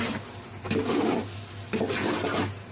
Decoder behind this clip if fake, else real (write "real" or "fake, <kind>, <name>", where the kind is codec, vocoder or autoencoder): real